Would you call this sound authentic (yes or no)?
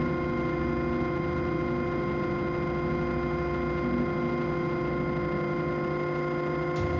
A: yes